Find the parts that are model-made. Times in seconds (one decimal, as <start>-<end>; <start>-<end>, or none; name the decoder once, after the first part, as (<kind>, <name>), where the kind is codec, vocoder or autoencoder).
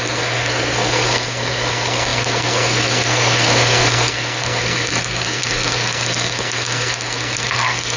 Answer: 0.0-8.0 (codec, SNAC)